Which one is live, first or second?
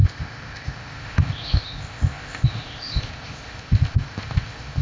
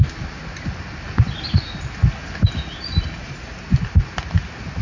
second